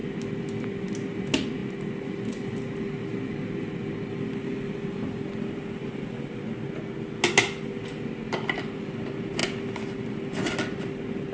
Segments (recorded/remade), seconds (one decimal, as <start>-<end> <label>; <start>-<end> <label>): 0.0-11.3 recorded